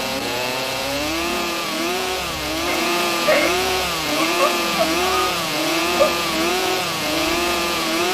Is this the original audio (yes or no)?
no